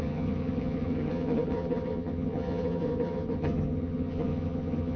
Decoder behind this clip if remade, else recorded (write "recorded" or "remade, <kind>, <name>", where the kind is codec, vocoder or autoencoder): remade, vocoder, HiFi-GAN